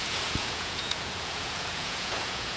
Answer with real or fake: fake